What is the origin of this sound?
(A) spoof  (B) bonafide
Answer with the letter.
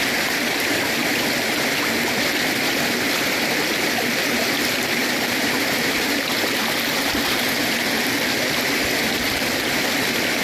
B